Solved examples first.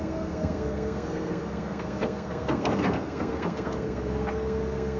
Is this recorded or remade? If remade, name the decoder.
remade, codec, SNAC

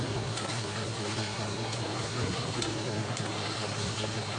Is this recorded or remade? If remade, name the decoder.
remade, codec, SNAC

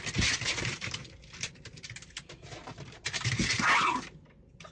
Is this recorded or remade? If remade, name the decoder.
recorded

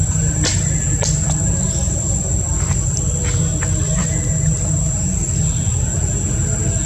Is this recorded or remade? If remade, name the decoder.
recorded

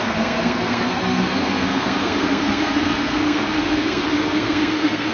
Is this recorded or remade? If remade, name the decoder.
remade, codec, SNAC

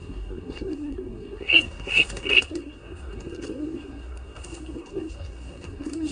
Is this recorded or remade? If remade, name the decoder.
remade, codec, SNAC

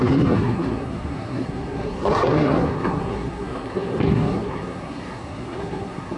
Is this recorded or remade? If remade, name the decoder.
remade, codec, SNAC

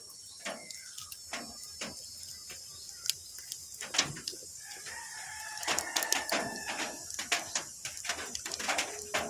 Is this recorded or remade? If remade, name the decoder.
recorded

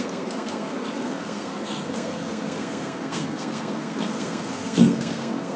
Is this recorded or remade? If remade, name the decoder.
remade, codec, SNAC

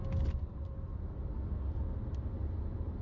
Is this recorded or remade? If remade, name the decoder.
recorded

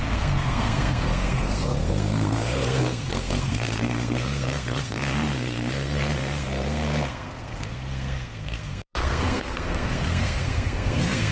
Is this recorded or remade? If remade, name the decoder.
remade, codec, SNAC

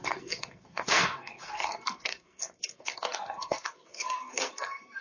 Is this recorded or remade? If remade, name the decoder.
remade, codec, SNAC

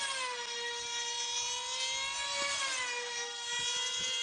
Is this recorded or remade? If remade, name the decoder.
recorded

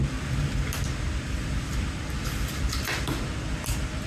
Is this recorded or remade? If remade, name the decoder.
recorded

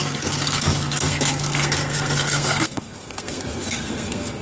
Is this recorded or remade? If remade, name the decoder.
remade, codec, SNAC